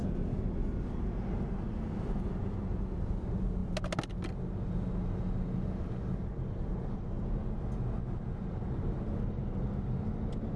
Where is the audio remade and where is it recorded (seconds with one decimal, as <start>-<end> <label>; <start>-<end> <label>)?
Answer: 0.0-10.6 recorded